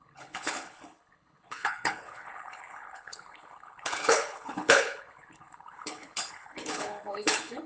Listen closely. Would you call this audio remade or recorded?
remade